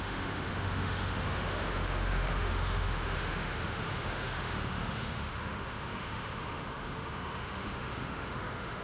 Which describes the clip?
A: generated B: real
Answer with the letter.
A